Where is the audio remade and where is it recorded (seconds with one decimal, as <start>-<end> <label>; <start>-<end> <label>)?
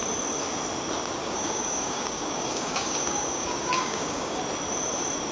0.0-1.2 recorded; 1.2-4.4 remade; 4.4-5.3 recorded